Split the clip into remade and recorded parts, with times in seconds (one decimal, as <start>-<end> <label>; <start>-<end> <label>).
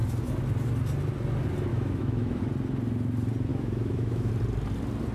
0.0-1.7 recorded; 1.7-2.4 remade; 2.4-3.5 recorded; 3.5-4.3 remade; 4.3-5.1 recorded